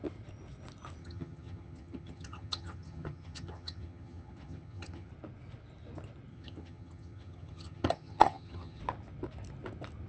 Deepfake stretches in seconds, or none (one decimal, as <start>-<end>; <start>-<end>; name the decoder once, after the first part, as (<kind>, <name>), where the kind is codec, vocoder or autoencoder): 1.0-5.1 (vocoder, HiFi-GAN); 6.3-8.8